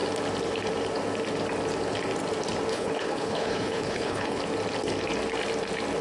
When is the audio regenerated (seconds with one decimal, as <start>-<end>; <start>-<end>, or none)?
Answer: 2.7-4.4